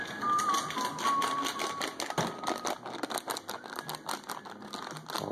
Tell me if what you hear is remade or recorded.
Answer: recorded